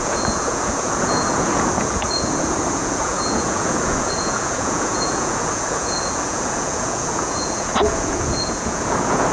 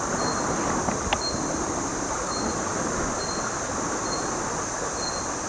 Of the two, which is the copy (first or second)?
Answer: first